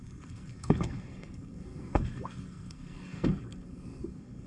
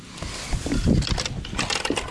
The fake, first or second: first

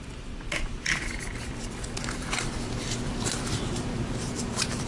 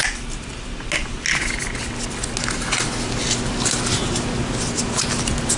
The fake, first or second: first